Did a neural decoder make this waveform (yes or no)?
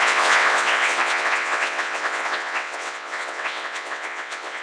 yes